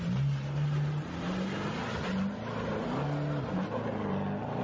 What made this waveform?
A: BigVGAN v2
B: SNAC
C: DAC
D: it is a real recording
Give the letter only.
D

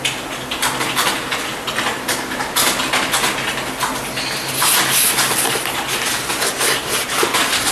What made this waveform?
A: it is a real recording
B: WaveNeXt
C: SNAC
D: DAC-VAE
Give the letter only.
A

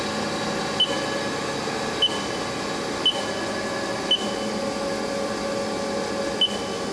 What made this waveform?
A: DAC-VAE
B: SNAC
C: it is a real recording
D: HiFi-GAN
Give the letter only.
C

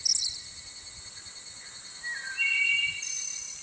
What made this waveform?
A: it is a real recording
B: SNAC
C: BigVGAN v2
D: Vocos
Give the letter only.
A